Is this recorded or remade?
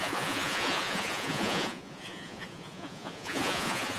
remade